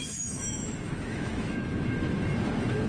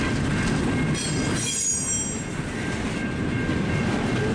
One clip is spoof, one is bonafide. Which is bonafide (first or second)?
second